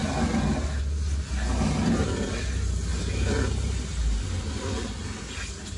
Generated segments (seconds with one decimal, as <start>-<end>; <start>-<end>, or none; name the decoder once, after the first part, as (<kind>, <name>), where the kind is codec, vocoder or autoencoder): none